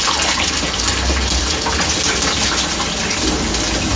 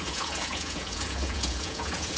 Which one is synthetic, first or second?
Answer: second